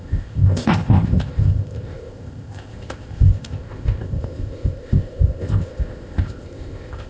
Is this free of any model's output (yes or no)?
no